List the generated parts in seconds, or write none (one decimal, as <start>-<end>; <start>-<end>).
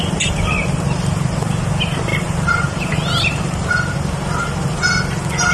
0.0-1.5; 2.1-3.7